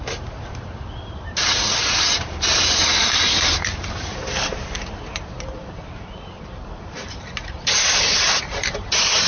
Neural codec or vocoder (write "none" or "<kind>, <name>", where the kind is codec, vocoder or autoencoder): vocoder, BigVGAN v2